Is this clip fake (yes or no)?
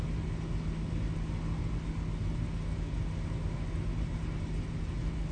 no